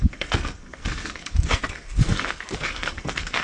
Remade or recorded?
remade